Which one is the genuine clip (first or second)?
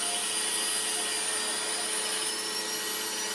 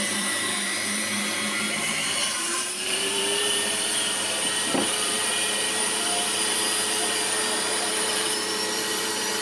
first